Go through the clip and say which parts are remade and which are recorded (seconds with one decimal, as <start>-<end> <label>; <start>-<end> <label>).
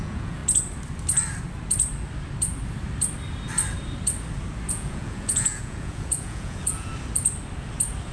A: 0.0-0.4 remade; 0.4-4.7 recorded; 4.7-6.9 remade; 6.9-8.1 recorded